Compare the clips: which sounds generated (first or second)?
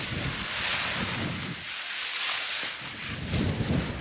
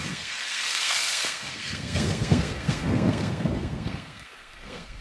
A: second